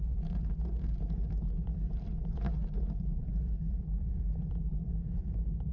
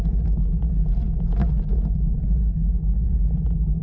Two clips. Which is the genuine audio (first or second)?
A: second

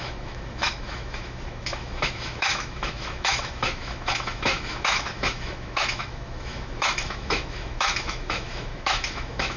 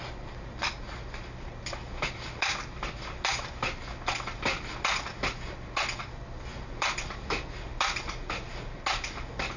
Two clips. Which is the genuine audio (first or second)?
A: second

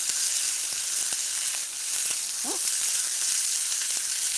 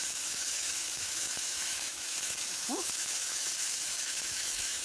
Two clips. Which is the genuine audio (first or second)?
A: first